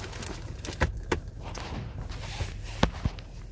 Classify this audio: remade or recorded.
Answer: recorded